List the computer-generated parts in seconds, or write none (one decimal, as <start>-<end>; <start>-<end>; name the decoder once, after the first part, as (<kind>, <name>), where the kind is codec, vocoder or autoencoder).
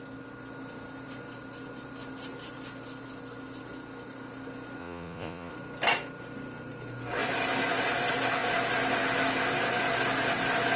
4.8-5.5 (vocoder, Vocos)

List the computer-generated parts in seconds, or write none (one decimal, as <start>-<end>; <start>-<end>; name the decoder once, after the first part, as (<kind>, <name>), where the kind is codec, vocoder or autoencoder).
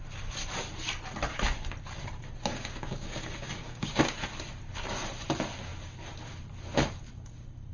2.5-4.0 (codec, DAC)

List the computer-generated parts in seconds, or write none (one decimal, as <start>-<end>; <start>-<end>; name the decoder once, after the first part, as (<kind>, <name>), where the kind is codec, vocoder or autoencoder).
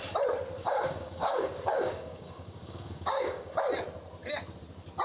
0.6-3.6 (codec, DAC)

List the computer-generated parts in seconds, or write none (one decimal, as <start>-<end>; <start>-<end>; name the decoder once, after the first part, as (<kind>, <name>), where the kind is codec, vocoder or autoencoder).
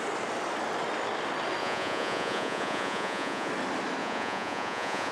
1.6-3.5 (vocoder, Vocos); 4.0-5.1